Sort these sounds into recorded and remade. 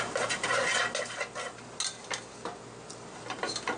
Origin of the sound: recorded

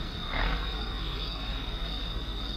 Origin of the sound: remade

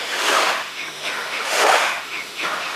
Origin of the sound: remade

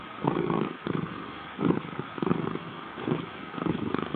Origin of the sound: remade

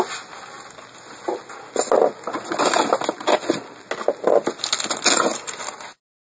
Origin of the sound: recorded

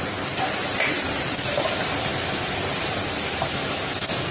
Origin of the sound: recorded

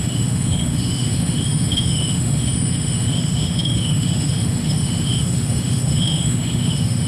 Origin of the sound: remade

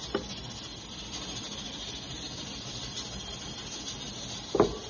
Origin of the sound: recorded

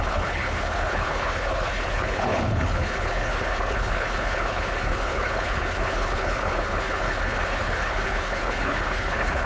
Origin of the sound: remade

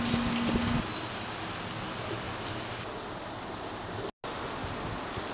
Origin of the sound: recorded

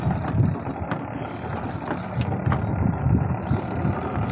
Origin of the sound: recorded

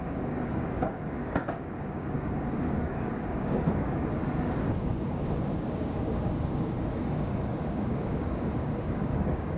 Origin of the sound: remade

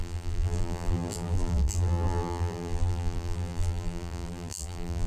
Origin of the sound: remade